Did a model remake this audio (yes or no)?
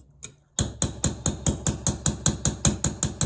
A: no